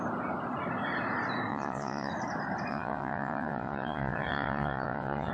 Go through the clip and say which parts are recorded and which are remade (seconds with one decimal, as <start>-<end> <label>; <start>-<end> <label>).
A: 0.0-1.5 recorded; 1.5-2.1 remade; 2.1-2.7 recorded; 2.7-5.3 remade